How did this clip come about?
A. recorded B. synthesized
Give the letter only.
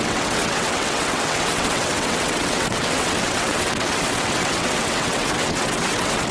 B